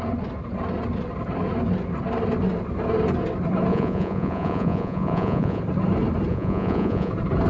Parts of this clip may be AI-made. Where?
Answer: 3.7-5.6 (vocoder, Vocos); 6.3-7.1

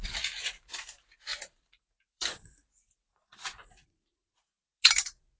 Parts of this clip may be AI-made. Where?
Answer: 1.3-4.5 (vocoder, BigVGAN v2)